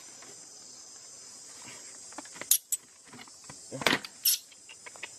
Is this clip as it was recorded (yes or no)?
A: yes